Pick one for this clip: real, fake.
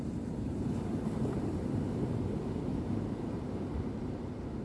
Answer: fake